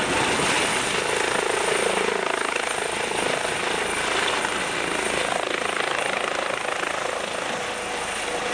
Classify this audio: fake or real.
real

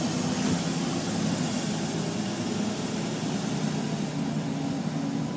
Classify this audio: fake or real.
real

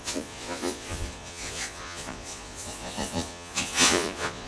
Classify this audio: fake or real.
fake